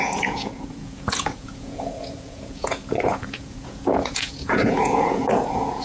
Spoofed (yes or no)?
yes